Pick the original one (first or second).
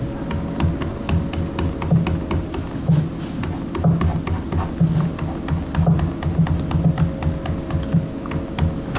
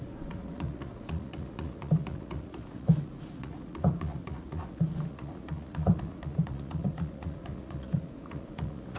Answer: first